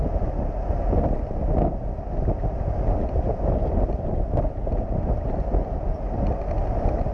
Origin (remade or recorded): recorded